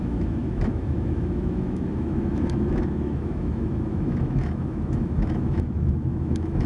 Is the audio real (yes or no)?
no